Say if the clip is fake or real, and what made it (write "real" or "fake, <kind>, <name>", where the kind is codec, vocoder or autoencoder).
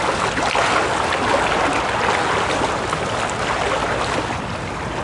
real